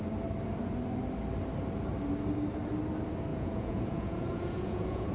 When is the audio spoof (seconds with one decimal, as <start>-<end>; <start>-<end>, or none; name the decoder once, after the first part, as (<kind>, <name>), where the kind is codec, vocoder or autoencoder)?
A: 3.3-5.1 (vocoder, Vocos)